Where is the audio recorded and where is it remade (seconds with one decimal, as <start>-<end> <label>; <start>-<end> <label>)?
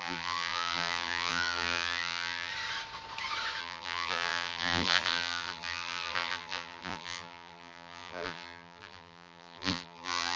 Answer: 0.0-2.5 remade; 2.5-3.6 recorded; 3.6-10.4 remade